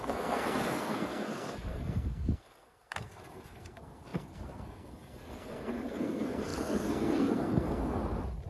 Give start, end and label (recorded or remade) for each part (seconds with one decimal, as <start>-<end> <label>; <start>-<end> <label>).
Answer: 0.0-8.0 remade; 8.0-8.5 recorded